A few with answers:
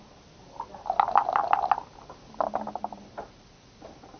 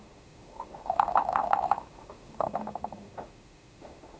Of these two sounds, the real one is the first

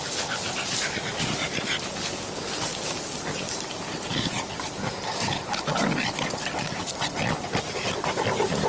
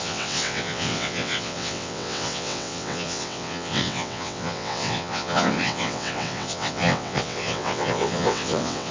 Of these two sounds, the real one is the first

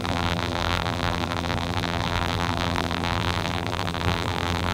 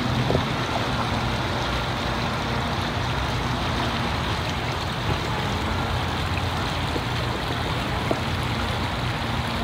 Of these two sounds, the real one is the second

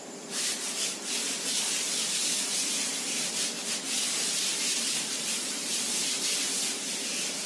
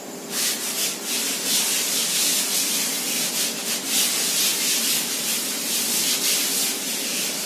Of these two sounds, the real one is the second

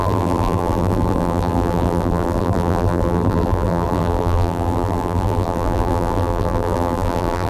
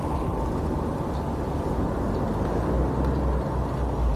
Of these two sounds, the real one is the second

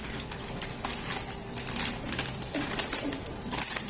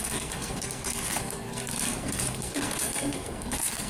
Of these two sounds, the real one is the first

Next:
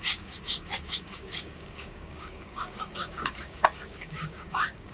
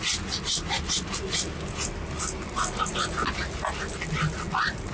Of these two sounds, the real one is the second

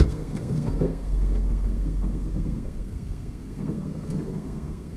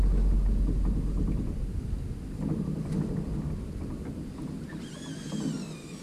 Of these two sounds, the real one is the second